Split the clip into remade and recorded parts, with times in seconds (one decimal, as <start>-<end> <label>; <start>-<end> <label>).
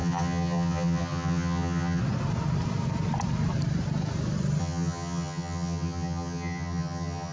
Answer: 0.0-2.0 remade; 2.0-4.6 recorded; 4.6-7.3 remade